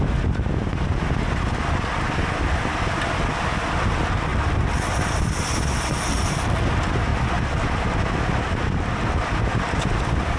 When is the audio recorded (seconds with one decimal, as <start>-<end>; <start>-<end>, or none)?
0.0-10.4